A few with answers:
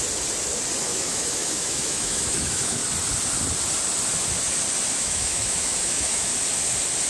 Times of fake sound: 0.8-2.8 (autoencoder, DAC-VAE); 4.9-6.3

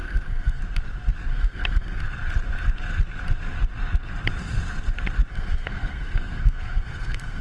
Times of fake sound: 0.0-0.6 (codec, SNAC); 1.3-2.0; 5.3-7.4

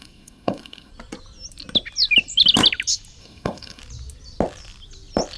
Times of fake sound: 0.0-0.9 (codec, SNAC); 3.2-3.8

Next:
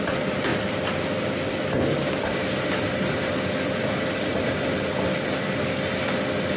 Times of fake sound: none

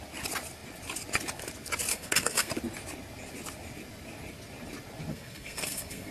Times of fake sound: 1.9-2.5 (codec, SNAC); 5.1-6.1

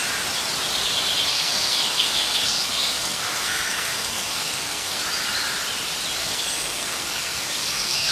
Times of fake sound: 1.3-5.0 (codec, SNAC); 6.2-8.1